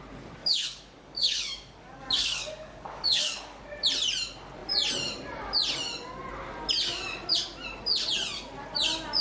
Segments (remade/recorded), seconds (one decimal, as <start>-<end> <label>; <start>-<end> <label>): 0.0-0.4 recorded; 0.4-3.6 remade; 3.6-9.2 recorded